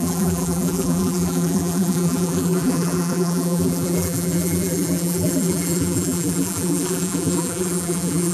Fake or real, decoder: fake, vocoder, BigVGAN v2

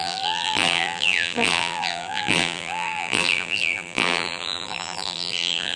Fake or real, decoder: fake, vocoder, BigVGAN v2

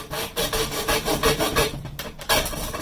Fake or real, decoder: fake, vocoder, BigVGAN v2